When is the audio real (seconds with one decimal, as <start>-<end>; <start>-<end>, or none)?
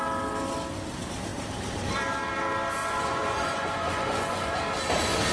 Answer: 0.0-2.8; 4.6-5.3